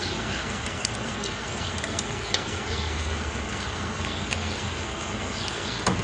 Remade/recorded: remade